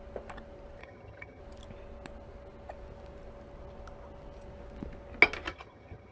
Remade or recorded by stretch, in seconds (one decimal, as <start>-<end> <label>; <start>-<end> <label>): 0.0-0.8 recorded; 0.8-1.4 remade; 1.4-5.5 recorded; 5.5-6.1 remade